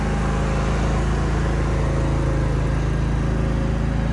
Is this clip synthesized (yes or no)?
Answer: no